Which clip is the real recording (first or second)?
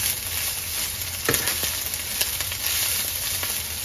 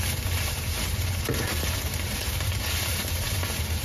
first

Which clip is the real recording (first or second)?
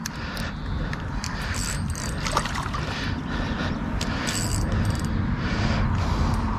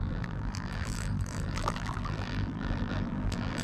first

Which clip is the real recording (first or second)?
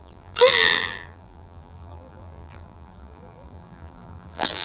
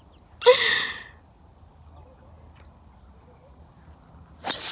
second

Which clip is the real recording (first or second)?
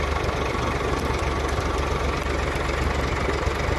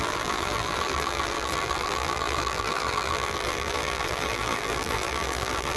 first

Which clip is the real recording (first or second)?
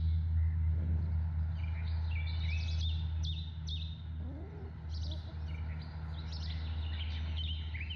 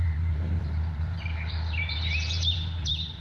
first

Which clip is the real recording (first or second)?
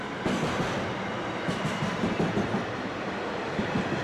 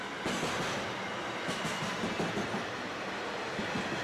second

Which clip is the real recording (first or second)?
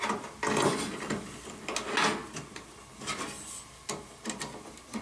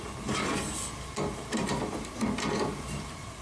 first